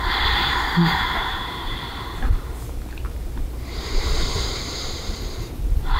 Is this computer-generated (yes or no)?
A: yes